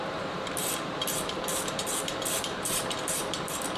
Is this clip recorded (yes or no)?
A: no